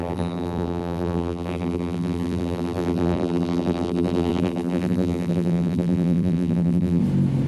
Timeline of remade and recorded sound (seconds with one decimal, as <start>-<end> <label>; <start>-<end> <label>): 0.0-7.0 remade; 7.0-7.5 recorded